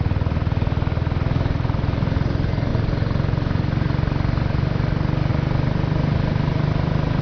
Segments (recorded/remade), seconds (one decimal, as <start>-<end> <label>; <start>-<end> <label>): 0.0-7.2 recorded